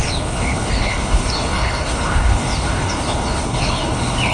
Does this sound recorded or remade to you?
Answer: remade